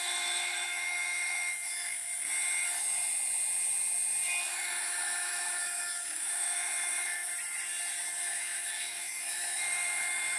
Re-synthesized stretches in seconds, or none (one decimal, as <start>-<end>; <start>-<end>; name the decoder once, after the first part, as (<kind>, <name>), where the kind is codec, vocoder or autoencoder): 0.0-2.1 (autoencoder, DAC-VAE); 4.4-7.3; 8.2-10.4

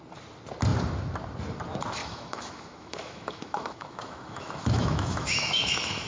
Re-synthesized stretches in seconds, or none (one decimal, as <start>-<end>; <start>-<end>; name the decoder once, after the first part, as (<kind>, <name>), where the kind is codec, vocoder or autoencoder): 2.0-6.1 (autoencoder, DAC-VAE)

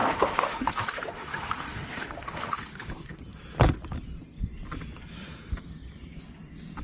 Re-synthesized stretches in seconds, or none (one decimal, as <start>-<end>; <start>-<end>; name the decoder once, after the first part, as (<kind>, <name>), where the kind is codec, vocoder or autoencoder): 0.0-3.2 (autoencoder, DAC-VAE)

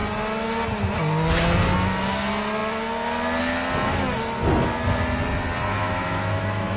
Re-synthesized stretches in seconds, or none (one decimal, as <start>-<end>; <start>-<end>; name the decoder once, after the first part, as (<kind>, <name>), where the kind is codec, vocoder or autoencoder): 5.7-6.8 (autoencoder, DAC-VAE)

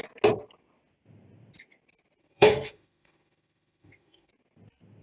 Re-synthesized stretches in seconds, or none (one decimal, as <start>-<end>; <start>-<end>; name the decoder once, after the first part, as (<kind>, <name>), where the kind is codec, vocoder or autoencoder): 2.2-4.3 (autoencoder, DAC-VAE)

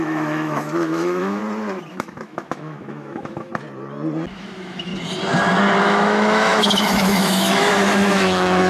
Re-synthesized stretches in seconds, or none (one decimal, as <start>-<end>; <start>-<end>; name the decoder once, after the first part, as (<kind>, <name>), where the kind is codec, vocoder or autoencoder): 0.0-1.4 (autoencoder, DAC-VAE); 1.9-3.5; 4.3-4.9; 5.8-8.7

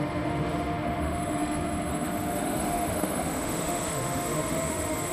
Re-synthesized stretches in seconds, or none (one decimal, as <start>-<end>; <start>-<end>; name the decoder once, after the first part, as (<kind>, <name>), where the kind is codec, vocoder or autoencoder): 0.0-5.1 (autoencoder, DAC-VAE)

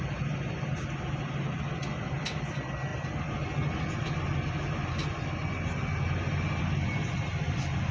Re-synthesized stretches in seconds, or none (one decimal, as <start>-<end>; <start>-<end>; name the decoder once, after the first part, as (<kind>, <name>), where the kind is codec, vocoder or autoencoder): none